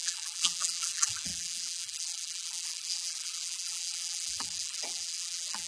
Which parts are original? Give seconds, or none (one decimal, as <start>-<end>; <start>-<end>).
none

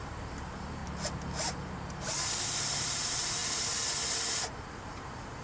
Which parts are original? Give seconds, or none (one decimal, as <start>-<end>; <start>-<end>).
0.8-2.8; 3.4-4.7

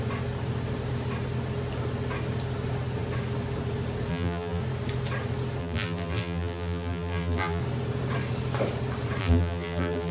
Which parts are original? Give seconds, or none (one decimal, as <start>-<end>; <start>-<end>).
0.0-4.1; 4.6-5.6; 7.6-9.2

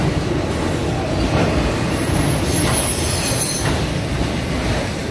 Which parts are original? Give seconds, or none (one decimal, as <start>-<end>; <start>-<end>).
0.0-5.1

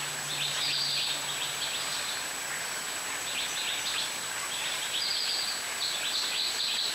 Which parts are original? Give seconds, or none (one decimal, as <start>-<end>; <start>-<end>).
0.0-6.9